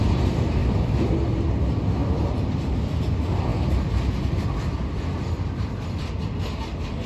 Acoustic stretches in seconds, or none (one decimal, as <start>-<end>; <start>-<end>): 0.0-0.6; 1.2-2.0; 2.7-7.1